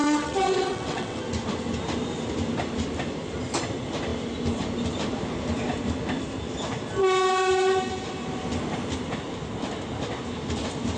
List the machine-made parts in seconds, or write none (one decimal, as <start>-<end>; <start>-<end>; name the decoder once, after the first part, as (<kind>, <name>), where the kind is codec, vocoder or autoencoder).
0.0-1.2 (vocoder, WaveNeXt)